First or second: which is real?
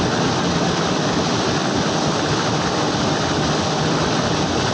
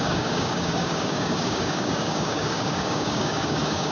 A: first